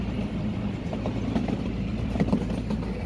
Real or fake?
real